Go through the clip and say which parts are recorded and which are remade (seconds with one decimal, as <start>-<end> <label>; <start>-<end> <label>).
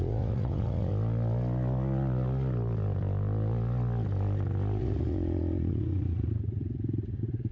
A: 0.0-0.9 remade; 0.9-4.8 recorded; 4.8-7.5 remade